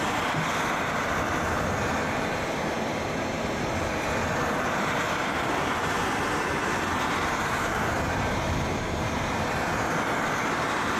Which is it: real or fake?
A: fake